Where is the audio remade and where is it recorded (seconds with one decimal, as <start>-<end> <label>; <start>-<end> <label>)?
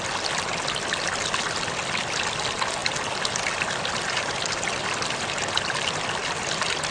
0.0-6.9 recorded